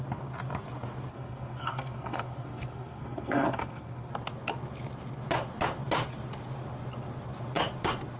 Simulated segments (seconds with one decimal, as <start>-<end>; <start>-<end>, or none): 1.1-4.1